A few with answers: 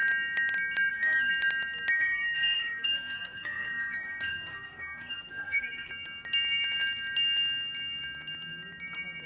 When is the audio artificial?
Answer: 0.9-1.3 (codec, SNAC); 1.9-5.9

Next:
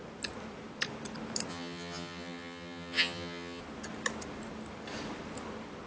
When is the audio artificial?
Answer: 1.5-3.6 (vocoder, HiFi-GAN)

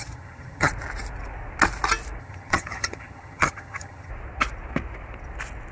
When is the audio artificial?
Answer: 0.0-0.7 (vocoder, HiFi-GAN); 2.2-4.1

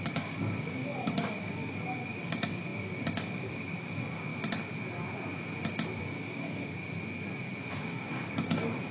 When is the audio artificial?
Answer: 0.0-4.3 (codec, DAC); 6.0-6.8; 7.7-8.9

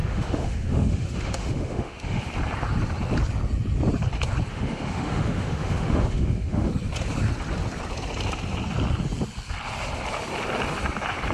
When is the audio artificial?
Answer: 0.0-2.2 (autoencoder, DAC-VAE); 4.5-6.7

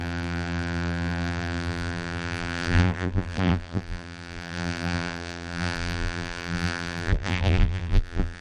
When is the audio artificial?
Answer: 0.0-8.4 (vocoder, BigVGAN v2)